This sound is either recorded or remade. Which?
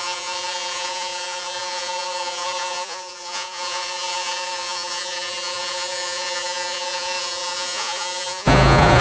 remade